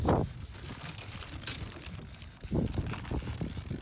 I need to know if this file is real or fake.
real